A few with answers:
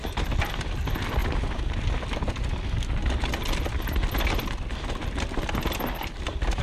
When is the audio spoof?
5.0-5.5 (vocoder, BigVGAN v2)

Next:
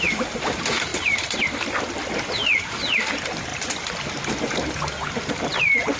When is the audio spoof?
0.9-2.6 (vocoder, BigVGAN v2); 3.5-4.1